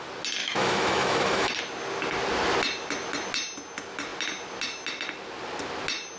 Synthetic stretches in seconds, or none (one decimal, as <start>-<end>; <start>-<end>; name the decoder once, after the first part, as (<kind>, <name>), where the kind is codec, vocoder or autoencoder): 0.4-1.5 (autoencoder, DAC-VAE)